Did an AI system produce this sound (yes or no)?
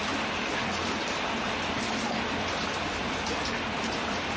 no